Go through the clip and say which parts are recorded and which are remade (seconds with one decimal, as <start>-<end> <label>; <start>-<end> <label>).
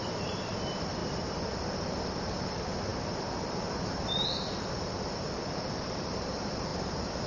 0.0-1.0 remade; 1.0-1.6 recorded; 1.6-7.3 remade